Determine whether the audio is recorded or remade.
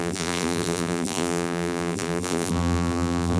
remade